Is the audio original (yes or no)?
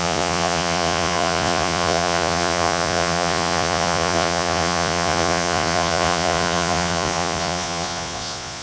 no